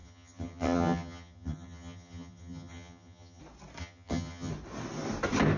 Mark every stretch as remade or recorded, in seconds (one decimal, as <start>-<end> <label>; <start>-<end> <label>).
0.0-3.4 remade; 3.4-3.8 recorded; 3.8-4.5 remade; 4.5-5.6 recorded